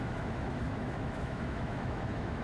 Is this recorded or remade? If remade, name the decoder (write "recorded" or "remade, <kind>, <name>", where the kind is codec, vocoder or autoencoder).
remade, autoencoder, DAC-VAE